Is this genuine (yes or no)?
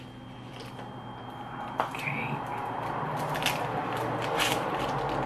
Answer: yes